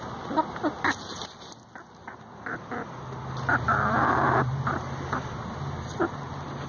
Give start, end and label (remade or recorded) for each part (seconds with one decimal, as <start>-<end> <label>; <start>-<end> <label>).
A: 0.0-0.6 remade; 0.6-3.5 recorded; 3.5-6.3 remade; 6.3-6.7 recorded

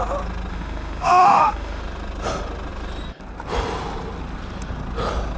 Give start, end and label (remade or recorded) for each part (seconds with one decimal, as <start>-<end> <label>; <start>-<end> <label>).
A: 0.0-0.5 recorded; 0.5-1.8 remade; 1.8-5.4 recorded